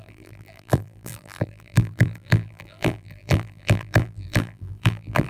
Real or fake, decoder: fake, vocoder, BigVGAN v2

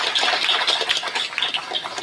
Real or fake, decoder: real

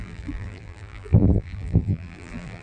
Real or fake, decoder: fake, vocoder, BigVGAN v2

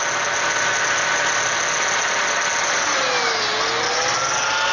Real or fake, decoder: real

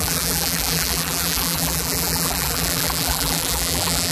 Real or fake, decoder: fake, vocoder, BigVGAN v2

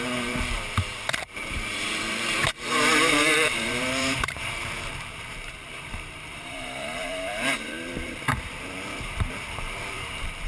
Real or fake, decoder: fake, vocoder, BigVGAN v2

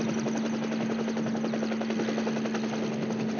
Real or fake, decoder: real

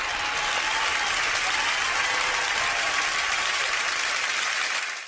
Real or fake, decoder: real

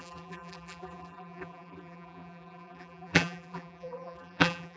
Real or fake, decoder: fake, vocoder, BigVGAN v2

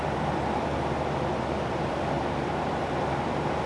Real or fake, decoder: fake, vocoder, BigVGAN v2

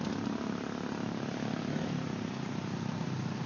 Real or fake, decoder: real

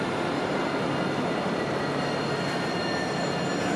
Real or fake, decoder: real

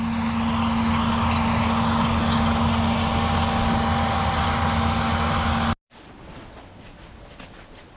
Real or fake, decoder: real